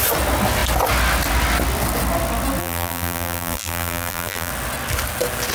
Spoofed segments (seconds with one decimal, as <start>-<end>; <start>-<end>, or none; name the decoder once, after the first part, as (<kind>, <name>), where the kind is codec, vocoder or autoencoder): 2.6-4.5 (vocoder, BigVGAN v2)